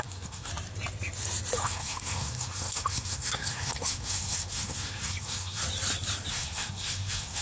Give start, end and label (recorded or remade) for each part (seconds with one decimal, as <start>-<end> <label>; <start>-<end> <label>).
0.0-0.5 remade; 0.5-1.6 recorded; 1.6-5.6 remade; 5.6-6.3 recorded; 6.3-7.4 remade